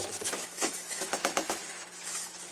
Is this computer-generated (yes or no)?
yes